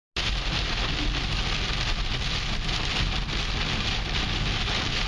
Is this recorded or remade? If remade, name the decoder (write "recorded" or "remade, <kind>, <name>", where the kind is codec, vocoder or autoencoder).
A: recorded